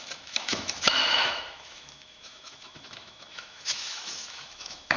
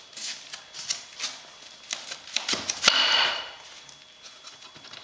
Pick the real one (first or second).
second